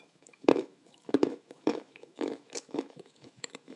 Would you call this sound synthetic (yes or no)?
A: yes